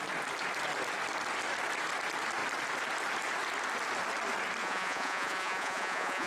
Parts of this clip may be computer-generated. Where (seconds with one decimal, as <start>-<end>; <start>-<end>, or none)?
4.6-6.3